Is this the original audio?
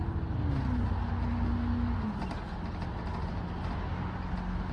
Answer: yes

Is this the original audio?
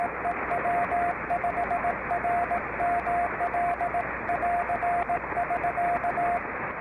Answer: yes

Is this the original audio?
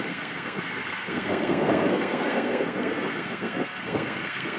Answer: no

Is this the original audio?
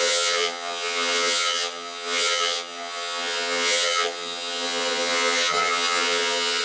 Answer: no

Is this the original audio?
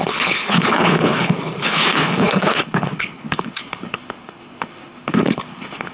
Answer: no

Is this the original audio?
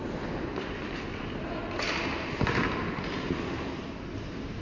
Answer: yes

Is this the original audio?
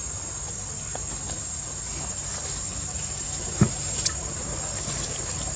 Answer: yes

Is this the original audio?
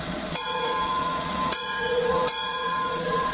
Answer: no